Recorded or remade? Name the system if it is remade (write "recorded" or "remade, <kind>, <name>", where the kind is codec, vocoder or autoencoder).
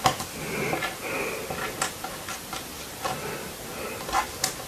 recorded